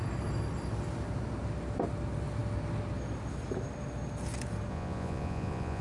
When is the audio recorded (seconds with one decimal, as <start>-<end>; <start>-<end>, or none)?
0.0-4.7